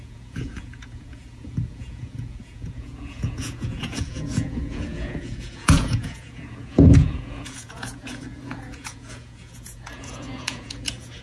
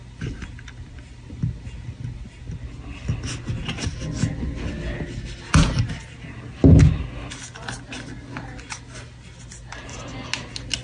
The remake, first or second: first